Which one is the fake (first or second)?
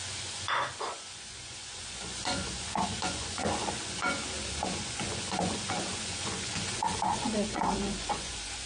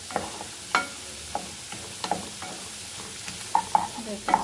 first